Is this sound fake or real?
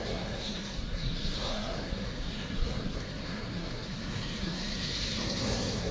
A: fake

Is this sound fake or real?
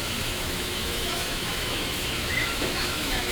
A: fake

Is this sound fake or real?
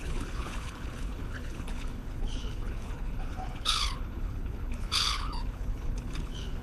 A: fake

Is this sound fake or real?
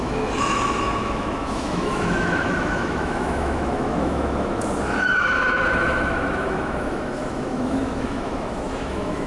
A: fake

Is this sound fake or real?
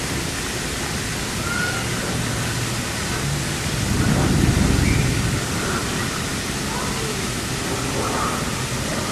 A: real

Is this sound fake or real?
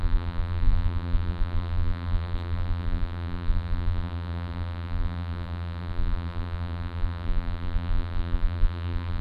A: fake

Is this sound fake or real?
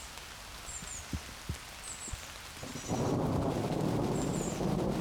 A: real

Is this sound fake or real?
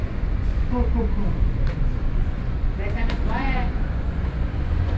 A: fake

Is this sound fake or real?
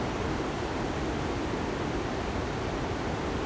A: real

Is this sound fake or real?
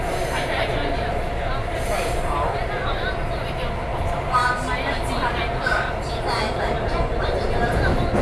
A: real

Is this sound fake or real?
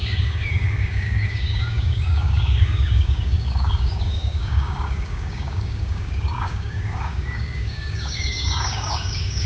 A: fake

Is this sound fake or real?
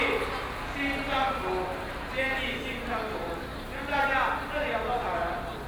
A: real